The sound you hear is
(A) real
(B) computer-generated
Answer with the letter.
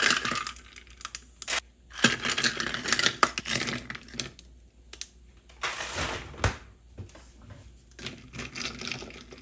A